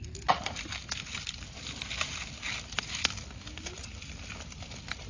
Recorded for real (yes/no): yes